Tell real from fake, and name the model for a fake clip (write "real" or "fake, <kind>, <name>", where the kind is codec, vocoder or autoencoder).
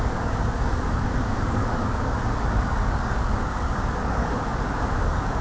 fake, codec, DAC